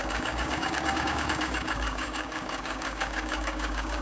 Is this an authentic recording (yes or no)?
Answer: no